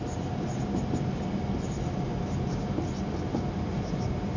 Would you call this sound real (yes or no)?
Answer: yes